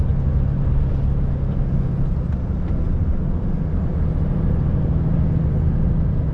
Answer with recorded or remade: recorded